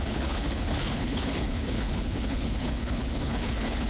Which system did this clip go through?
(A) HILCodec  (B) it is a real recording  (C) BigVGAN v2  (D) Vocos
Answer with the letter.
A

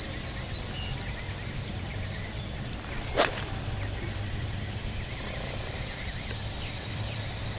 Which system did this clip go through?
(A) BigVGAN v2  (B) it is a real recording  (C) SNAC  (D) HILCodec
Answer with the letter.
A